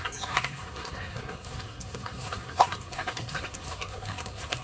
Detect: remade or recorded remade